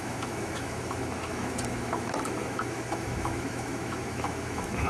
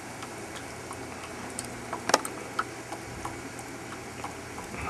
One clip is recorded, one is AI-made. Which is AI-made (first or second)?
first